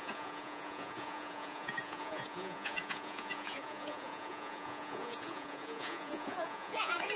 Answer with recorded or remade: remade